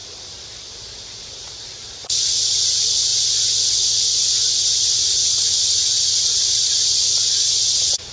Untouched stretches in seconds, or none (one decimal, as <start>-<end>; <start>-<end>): 0.0-1.2; 3.1-4.5

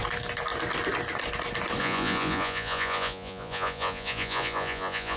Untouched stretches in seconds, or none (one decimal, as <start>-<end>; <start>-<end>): 0.0-1.8